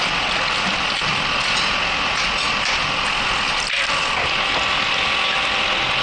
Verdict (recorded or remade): recorded